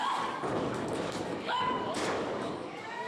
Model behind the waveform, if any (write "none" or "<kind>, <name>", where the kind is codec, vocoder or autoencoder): codec, DAC